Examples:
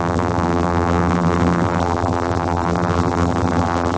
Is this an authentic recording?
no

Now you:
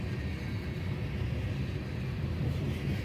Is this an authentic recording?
yes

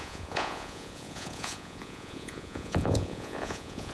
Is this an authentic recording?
no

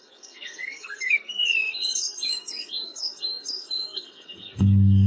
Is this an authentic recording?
no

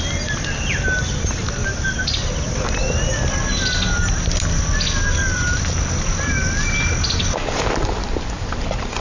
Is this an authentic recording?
yes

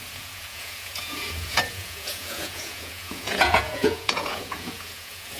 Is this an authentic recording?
no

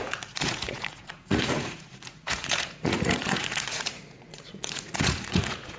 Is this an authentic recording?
no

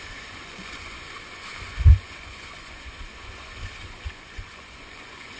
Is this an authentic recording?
no